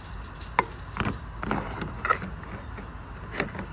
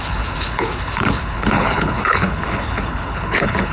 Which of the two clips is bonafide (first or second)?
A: first